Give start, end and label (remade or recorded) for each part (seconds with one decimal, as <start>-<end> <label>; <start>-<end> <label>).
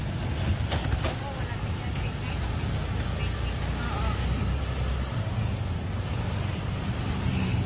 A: 0.0-7.7 recorded